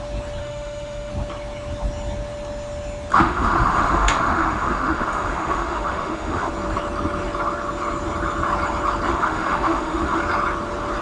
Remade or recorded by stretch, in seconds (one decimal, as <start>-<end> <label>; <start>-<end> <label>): 0.0-0.4 recorded; 0.4-1.1 remade; 1.1-3.1 recorded; 3.1-6.5 remade; 6.5-9.1 recorded; 9.1-10.2 remade; 10.2-11.0 recorded